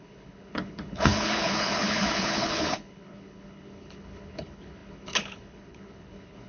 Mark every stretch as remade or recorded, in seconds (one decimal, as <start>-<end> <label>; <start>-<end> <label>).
0.0-6.5 remade

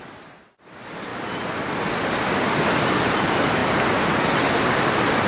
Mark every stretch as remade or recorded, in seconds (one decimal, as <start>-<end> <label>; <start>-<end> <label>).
0.0-5.3 recorded